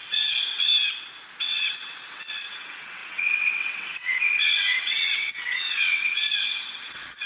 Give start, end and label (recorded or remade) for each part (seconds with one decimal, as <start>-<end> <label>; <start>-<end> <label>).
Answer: 0.0-0.7 remade; 0.7-1.4 recorded; 1.4-7.3 remade